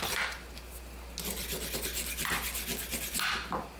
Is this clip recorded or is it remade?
recorded